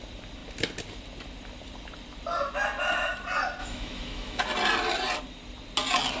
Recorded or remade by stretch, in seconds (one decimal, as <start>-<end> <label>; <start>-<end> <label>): 0.0-3.6 recorded; 3.6-4.4 remade; 4.4-6.2 recorded